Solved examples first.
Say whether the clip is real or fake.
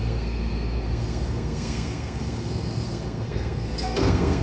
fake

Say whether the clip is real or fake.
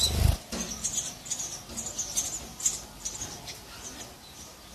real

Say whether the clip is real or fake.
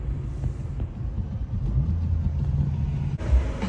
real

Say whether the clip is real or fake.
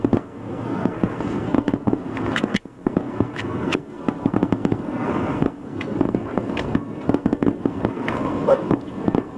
fake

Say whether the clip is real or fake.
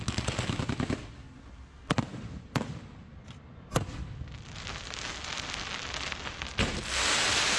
real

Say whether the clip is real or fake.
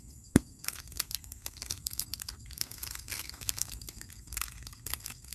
fake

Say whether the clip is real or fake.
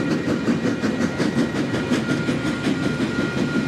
real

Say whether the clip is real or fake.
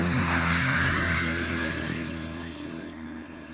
fake